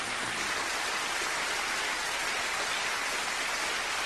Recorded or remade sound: recorded